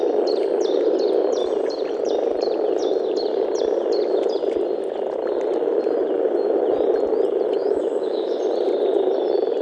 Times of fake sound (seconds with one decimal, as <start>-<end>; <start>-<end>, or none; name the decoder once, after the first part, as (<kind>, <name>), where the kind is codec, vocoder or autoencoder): 7.6-8.4 (autoencoder, DAC-VAE)